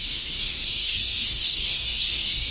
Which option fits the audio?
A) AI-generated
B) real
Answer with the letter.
A